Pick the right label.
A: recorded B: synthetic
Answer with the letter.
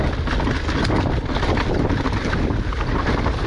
A